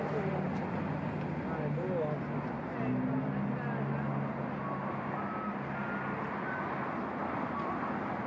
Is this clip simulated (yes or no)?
no